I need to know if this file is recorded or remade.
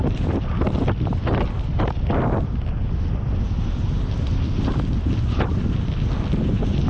recorded